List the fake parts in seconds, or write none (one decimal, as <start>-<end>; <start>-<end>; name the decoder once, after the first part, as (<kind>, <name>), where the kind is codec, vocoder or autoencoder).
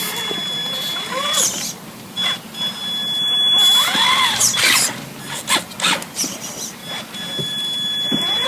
none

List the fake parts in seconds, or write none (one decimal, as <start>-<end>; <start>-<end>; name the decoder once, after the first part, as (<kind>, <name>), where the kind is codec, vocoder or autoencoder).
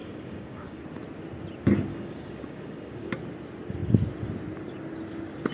0.0-0.8 (codec, DAC); 1.9-3.1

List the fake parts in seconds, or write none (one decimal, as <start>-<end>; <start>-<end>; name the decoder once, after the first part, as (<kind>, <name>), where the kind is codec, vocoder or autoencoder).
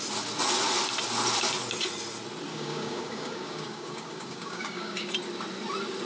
2.5-5.1 (codec, DAC)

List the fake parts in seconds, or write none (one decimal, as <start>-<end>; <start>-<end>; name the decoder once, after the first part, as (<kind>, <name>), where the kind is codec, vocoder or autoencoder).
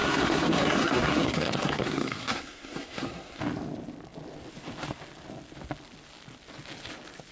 0.0-3.4 (codec, SNAC)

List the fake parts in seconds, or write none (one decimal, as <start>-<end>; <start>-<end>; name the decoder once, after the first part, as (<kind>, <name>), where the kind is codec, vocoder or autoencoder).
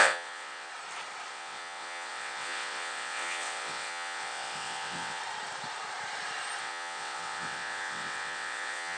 0.0-0.7 (vocoder, WaveNeXt); 1.3-5.2; 6.6-9.0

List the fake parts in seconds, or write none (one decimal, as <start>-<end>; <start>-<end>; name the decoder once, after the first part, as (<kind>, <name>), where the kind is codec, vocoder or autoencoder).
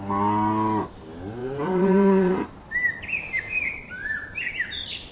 1.4-4.5 (vocoder, BigVGAN v2)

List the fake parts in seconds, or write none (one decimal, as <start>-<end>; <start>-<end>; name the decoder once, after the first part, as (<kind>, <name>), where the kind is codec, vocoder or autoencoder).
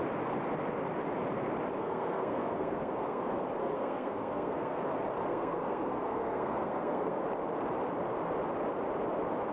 1.8-3.2 (codec, SNAC); 3.6-4.8; 5.3-7.2